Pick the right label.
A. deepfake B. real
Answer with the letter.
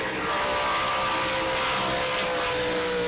B